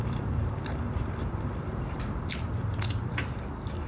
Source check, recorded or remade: remade